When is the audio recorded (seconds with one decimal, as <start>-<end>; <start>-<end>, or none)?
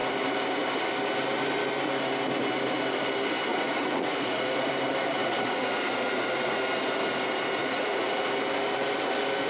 0.0-3.5; 4.7-5.2; 6.6-7.6; 8.3-9.5